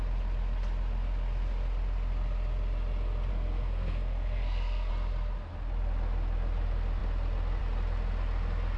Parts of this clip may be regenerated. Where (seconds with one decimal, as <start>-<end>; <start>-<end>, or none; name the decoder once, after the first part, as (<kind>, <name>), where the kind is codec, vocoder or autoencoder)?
3.3-4.9 (codec, SNAC)